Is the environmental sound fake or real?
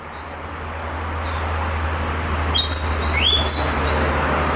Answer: real